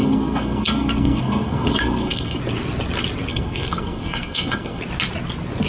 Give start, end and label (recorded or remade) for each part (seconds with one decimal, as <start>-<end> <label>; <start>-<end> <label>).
0.0-2.4 remade; 2.4-3.3 recorded; 3.3-4.8 remade; 4.8-5.7 recorded